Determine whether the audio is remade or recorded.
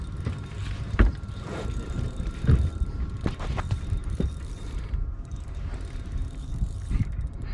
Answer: remade